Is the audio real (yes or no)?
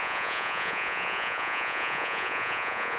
no